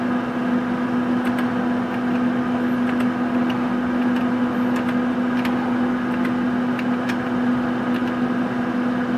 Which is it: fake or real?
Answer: real